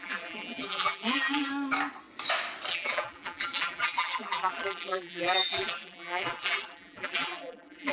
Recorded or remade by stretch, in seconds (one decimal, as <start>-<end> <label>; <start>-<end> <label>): 0.0-1.5 remade; 1.5-2.7 recorded; 2.7-7.9 remade